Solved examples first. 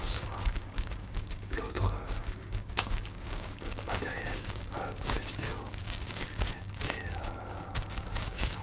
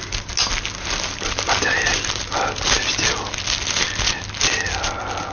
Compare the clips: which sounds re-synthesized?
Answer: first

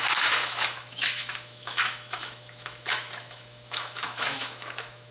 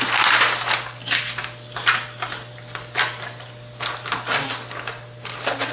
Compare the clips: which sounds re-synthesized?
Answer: first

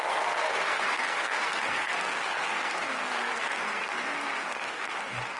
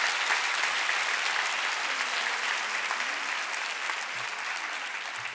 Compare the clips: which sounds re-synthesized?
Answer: first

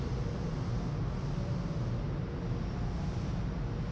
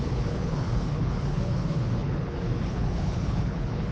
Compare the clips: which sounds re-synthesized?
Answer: second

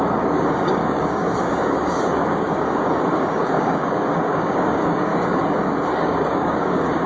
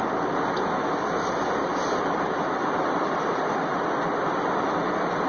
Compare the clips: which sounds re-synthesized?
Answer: first